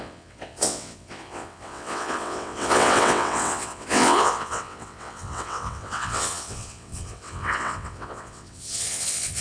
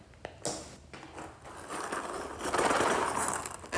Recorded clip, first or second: second